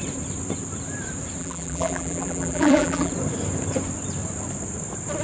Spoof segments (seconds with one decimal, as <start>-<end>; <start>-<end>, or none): 1.4-3.1